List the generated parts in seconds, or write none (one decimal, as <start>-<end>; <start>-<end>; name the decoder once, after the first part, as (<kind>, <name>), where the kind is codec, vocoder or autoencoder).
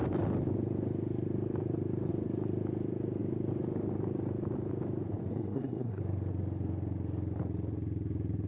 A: 5.3-6.0 (codec, SNAC)